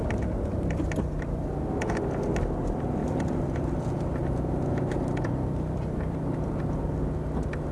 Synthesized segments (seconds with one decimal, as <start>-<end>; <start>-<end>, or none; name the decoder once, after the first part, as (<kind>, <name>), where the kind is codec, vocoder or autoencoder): 3.0-6.6 (vocoder, BigVGAN v2)